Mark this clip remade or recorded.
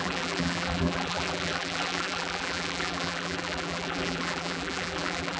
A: remade